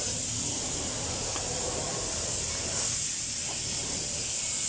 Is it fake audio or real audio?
real